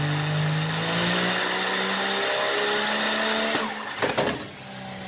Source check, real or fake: real